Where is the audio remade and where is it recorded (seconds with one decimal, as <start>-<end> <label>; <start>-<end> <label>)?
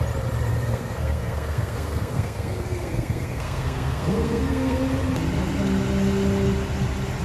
0.0-0.5 recorded; 0.5-4.8 remade; 4.8-7.2 recorded